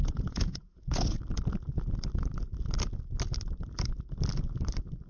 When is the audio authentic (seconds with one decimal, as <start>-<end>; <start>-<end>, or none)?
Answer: 1.2-5.1